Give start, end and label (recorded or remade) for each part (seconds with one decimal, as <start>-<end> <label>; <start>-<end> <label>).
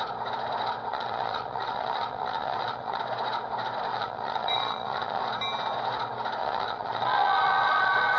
0.0-0.9 recorded; 0.9-3.0 remade; 3.0-3.9 recorded; 3.9-5.2 remade; 5.2-6.4 recorded; 6.4-8.2 remade